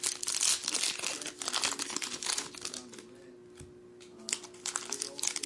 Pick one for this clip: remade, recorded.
recorded